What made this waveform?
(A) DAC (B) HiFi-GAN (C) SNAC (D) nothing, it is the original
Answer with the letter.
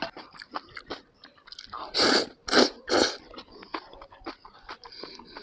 D